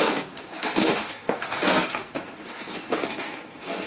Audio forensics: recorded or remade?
remade